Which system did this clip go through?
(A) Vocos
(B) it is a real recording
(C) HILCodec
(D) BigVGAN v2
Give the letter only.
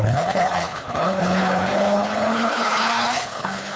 C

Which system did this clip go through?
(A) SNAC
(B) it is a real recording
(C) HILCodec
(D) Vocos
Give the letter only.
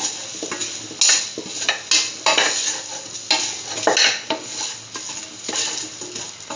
B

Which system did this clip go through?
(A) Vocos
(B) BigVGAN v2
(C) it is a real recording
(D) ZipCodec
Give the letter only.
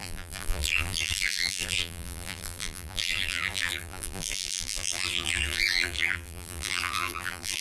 B